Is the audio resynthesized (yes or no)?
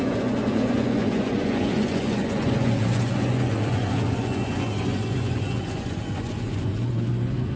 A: yes